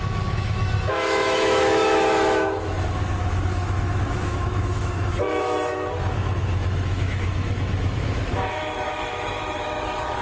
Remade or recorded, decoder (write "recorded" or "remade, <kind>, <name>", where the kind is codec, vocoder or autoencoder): remade, autoencoder, DAC-VAE